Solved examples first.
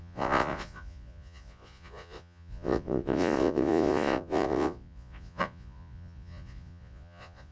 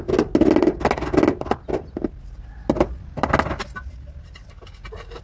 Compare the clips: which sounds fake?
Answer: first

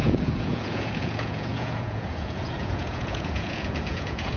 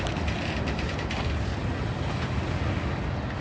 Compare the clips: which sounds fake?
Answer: first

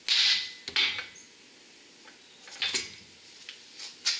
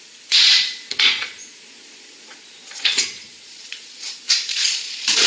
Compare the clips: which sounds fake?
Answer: second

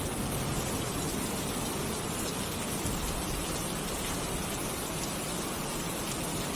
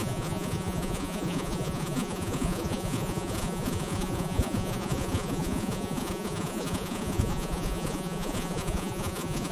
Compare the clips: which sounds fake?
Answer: second